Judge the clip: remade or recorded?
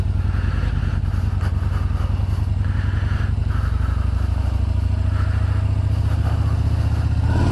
recorded